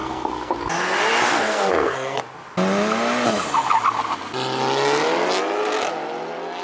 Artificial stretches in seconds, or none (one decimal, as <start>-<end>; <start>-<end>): 0.0-0.6; 1.3-2.2